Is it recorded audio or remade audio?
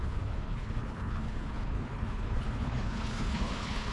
remade